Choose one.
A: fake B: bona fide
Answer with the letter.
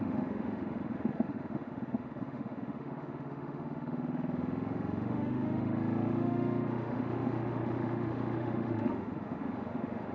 A